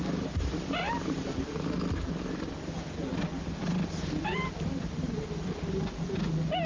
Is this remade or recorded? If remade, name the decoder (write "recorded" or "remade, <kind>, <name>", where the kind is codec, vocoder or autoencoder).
recorded